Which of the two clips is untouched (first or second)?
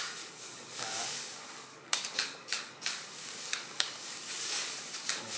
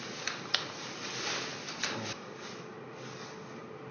second